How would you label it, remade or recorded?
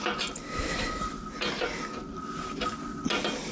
recorded